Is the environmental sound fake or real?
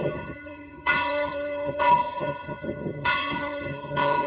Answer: fake